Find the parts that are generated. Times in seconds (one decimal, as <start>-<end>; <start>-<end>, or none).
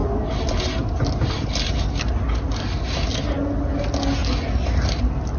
none